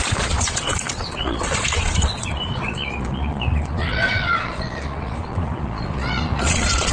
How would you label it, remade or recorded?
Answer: remade